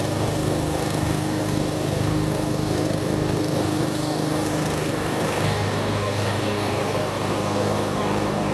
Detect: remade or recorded remade